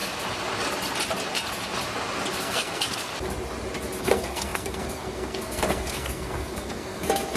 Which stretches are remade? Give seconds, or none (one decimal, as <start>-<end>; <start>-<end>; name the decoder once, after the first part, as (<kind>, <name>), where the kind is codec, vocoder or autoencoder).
2.4-3.1 (codec, SNAC); 4.0-7.4